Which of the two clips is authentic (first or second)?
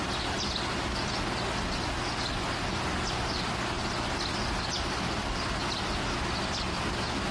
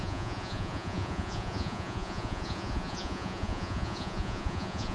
first